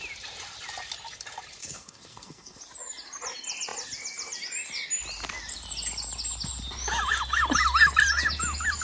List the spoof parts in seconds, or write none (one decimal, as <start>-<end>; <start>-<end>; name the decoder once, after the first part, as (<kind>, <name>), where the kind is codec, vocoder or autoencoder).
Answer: 1.6-2.6 (codec, SNAC)